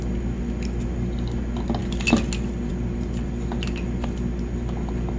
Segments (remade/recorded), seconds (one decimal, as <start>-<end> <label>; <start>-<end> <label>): 0.0-5.2 recorded